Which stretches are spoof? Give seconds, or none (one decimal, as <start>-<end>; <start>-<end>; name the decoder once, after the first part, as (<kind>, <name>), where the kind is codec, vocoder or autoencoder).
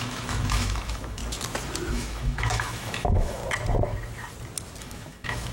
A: 0.0-1.2 (autoencoder, DAC-VAE); 1.9-3.4; 4.8-5.5